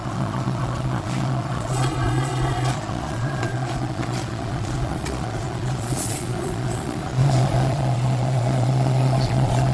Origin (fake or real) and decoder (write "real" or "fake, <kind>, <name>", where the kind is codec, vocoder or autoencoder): fake, vocoder, Vocos